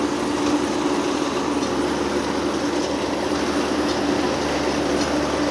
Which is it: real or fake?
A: real